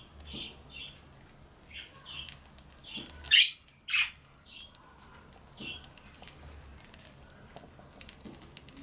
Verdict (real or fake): real